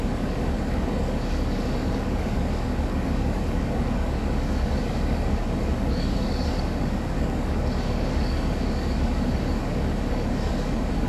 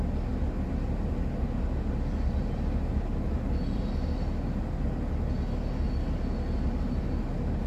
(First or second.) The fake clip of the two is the first